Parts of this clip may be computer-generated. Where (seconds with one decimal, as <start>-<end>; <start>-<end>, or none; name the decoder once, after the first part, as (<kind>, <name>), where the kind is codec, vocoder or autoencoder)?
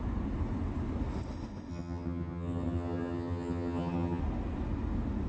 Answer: 1.7-4.2 (vocoder, HiFi-GAN)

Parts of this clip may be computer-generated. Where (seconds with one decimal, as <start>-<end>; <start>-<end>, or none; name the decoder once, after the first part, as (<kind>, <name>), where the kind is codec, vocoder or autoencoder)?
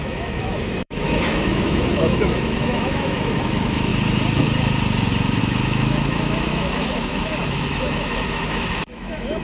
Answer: 0.0-3.9 (autoencoder, DAC-VAE); 5.4-9.4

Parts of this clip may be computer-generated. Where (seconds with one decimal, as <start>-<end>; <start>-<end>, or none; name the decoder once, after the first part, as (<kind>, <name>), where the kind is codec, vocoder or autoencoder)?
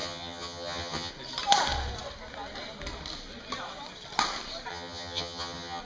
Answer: 0.0-1.1 (vocoder, HiFi-GAN); 4.7-5.8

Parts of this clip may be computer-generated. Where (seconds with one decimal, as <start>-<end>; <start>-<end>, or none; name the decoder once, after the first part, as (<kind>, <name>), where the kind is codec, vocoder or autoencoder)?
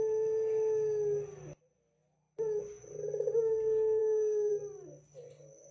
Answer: 4.0-4.5 (codec, SNAC)